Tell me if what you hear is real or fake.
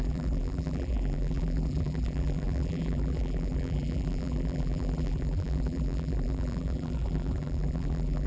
fake